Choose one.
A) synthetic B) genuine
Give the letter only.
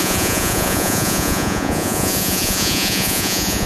A